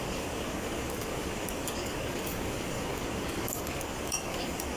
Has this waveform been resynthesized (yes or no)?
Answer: yes